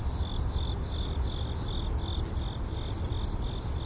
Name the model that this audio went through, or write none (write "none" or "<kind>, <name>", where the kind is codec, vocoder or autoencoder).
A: none